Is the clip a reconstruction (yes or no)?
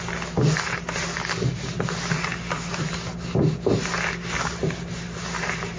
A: no